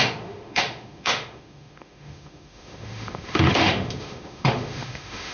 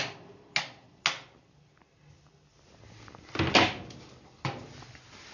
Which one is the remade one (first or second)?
first